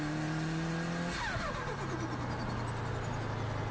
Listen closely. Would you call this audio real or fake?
real